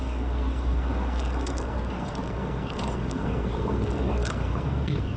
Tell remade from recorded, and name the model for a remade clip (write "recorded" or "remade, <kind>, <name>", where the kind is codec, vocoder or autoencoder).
remade, codec, SNAC